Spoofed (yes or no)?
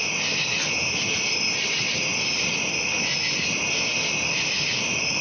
no